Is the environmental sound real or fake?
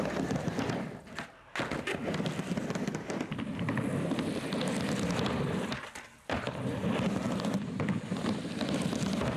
real